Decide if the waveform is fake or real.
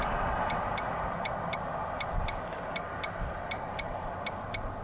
real